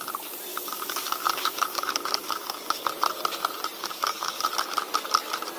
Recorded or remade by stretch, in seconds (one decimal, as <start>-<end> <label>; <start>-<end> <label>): 0.0-0.5 recorded; 0.5-2.9 remade; 2.9-3.8 recorded; 3.8-4.5 remade; 4.5-5.6 recorded